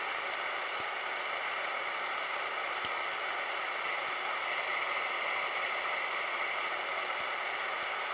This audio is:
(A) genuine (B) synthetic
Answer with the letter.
A